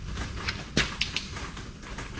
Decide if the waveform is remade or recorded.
recorded